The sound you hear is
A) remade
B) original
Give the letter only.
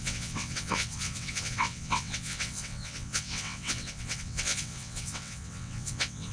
A